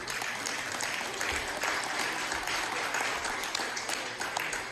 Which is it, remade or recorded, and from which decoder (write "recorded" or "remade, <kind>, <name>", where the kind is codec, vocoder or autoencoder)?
remade, vocoder, BigVGAN v2